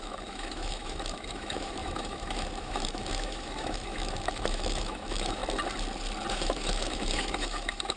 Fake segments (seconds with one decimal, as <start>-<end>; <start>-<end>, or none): 0.0-5.4; 6.3-8.0